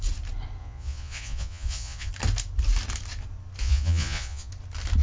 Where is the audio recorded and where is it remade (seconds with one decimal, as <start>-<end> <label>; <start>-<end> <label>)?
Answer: 0.0-0.6 recorded; 0.6-2.1 remade; 2.1-3.6 recorded; 3.6-4.5 remade; 4.5-5.0 recorded